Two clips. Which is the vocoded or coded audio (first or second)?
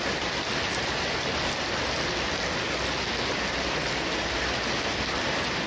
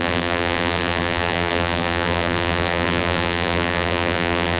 second